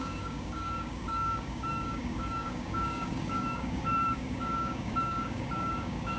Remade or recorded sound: remade